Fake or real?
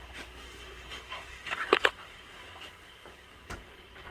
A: fake